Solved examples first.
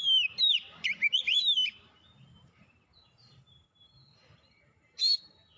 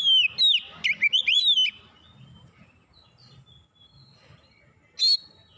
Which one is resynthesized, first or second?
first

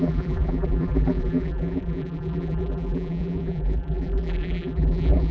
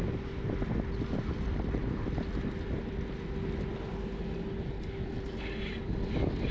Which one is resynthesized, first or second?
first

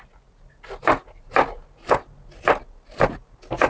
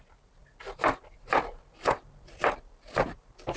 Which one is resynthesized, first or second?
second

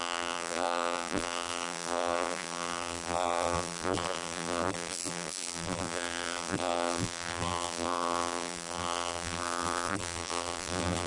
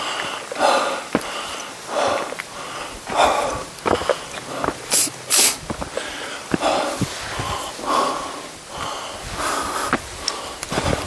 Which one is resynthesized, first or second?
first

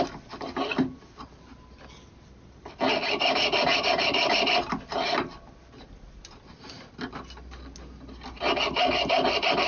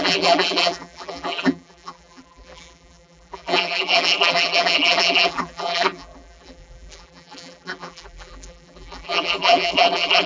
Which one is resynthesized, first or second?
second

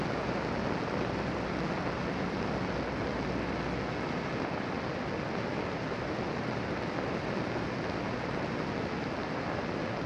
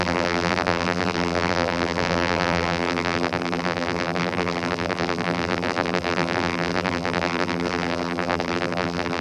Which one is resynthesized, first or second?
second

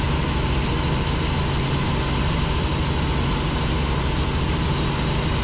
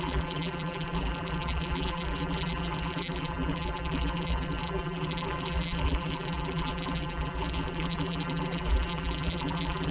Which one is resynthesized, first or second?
second